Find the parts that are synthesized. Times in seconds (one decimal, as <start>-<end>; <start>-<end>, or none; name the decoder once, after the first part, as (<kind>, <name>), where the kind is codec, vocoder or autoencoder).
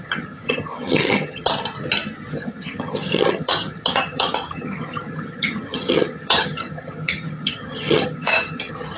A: 0.0-1.5 (vocoder, HiFi-GAN); 2.3-9.0